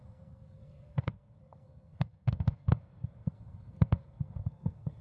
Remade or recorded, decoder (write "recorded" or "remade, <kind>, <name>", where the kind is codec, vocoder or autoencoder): remade, codec, SNAC